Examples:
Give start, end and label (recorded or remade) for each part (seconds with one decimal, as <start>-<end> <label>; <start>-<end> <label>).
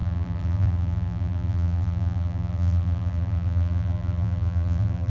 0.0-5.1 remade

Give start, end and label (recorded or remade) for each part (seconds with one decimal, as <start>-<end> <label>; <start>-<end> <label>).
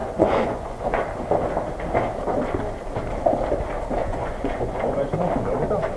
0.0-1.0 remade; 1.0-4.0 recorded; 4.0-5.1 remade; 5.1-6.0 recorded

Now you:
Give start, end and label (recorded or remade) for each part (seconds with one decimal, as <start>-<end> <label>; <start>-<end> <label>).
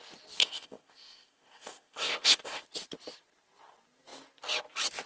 0.0-0.4 recorded; 0.4-2.6 remade; 2.6-5.1 recorded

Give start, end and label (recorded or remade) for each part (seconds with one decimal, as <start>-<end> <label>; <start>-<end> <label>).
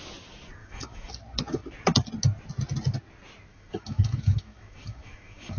0.0-0.6 recorded; 0.6-1.1 remade; 1.1-3.5 recorded; 3.5-5.6 remade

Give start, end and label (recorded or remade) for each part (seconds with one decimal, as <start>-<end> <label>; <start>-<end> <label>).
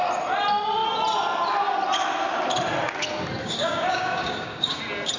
0.0-3.4 recorded; 3.4-4.8 remade; 4.8-5.2 recorded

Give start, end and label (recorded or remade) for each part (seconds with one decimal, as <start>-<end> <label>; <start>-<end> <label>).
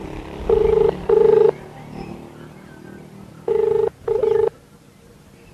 0.0-3.3 remade; 3.3-5.5 recorded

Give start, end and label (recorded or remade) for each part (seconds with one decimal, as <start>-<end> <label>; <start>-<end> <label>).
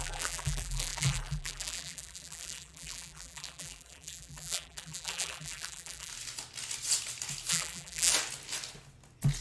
0.0-6.1 remade; 6.1-7.5 recorded; 7.5-8.1 remade; 8.1-9.4 recorded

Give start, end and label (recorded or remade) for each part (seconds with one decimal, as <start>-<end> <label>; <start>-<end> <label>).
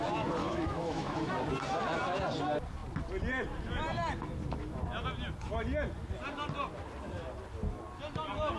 0.0-0.4 recorded; 0.4-1.3 remade; 1.3-8.6 recorded